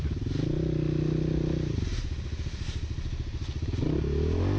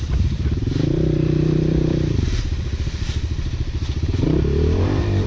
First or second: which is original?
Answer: first